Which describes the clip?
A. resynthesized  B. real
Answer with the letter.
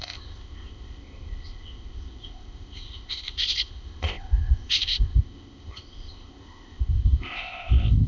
A